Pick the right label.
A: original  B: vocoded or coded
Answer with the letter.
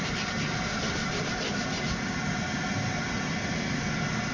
A